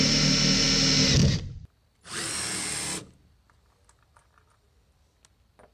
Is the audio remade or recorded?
recorded